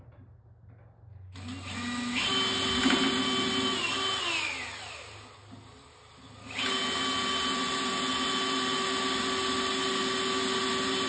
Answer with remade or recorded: recorded